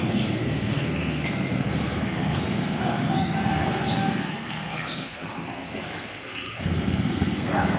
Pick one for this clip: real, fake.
fake